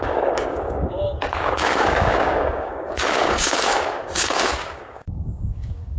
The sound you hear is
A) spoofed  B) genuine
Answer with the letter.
A